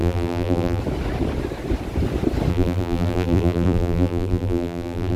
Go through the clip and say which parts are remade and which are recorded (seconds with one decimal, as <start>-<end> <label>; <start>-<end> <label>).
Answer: 0.0-0.8 remade; 0.8-2.5 recorded; 2.5-5.2 remade